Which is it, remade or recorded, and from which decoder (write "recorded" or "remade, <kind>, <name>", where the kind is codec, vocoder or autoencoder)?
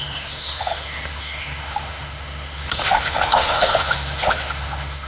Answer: remade, autoencoder, DAC-VAE